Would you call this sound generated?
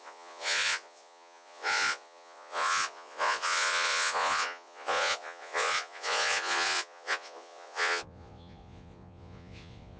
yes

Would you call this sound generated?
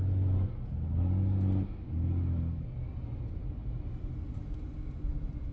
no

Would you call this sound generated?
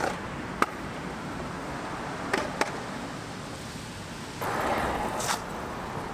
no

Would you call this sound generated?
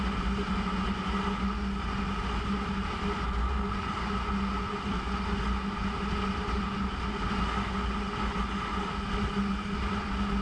no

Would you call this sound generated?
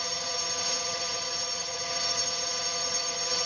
yes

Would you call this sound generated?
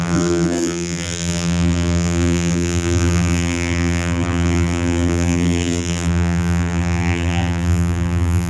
yes